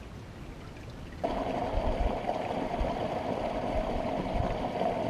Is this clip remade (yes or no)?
no